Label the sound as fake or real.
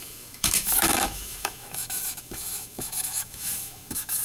fake